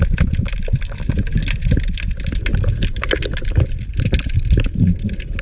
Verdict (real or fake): real